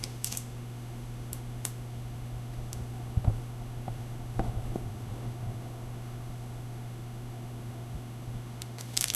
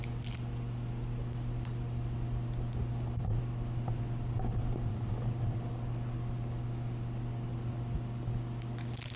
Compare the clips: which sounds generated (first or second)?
first